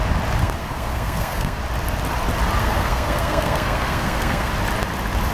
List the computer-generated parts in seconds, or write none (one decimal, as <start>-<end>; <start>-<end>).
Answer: 0.4-1.6; 2.6-4.5